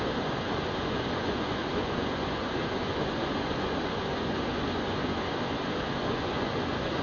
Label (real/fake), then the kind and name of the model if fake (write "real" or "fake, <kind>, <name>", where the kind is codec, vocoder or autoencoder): fake, vocoder, Vocos